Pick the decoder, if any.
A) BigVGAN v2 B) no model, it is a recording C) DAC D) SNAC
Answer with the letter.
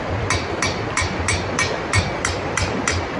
B